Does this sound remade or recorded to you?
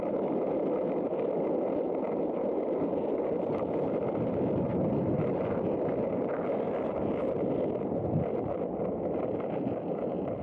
recorded